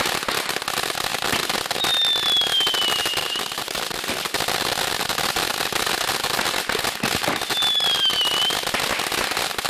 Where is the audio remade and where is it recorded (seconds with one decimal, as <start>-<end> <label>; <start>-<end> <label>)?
0.0-3.2 recorded; 3.2-4.2 remade; 4.2-9.7 recorded

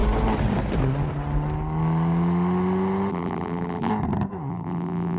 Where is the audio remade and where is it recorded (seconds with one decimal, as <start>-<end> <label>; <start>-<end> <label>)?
0.0-3.1 recorded; 3.1-3.9 remade; 3.9-4.5 recorded; 4.5-5.2 remade